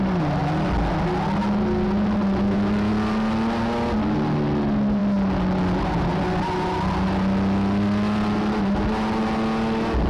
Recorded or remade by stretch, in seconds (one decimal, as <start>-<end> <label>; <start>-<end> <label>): 0.0-10.1 recorded